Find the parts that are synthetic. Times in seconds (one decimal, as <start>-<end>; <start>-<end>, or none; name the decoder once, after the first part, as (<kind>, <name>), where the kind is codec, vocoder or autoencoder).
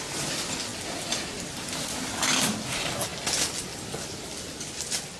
none